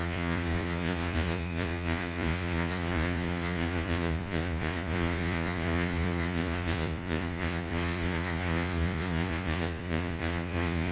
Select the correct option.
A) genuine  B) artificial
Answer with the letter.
B